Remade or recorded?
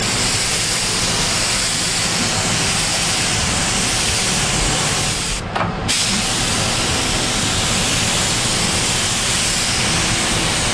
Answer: remade